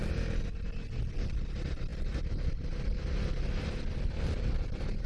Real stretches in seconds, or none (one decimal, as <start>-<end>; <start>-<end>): 0.0-5.1